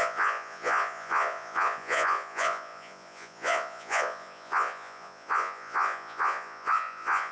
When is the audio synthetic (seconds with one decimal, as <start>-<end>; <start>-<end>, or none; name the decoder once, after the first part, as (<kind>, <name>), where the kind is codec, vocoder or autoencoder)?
0.0-7.3 (vocoder, Vocos)